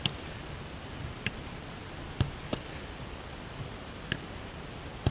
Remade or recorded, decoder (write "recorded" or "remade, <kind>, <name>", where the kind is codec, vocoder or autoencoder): recorded